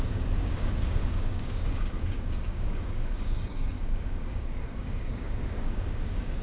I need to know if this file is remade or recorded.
remade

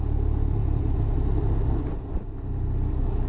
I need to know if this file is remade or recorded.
recorded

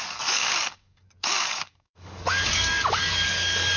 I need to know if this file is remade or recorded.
remade